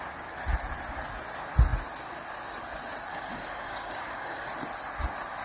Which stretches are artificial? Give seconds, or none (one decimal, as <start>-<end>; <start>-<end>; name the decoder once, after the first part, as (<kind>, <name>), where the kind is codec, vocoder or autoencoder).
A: 3.1-4.5 (codec, DAC)